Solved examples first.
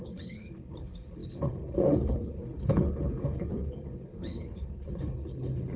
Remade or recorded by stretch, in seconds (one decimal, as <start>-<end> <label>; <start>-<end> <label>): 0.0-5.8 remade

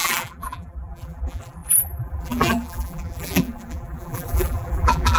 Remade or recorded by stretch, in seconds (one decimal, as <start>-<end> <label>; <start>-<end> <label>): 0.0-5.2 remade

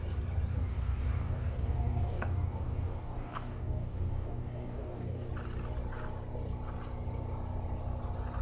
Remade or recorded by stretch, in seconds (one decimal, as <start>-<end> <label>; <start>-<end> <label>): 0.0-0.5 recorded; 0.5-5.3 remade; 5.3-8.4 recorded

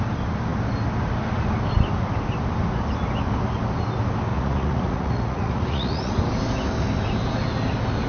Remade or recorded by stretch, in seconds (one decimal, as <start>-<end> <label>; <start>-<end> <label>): 0.0-4.3 recorded; 4.3-6.1 remade; 6.1-8.1 recorded

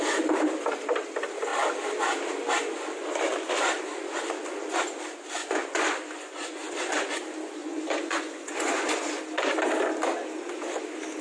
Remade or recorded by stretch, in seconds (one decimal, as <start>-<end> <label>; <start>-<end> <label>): 0.0-5.4 recorded; 5.4-6.9 remade; 6.9-7.6 recorded; 7.6-9.2 remade; 9.2-11.2 recorded